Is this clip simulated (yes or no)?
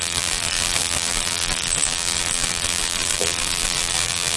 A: yes